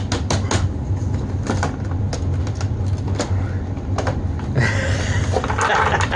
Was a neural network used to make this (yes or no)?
no